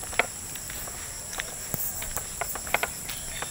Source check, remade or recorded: recorded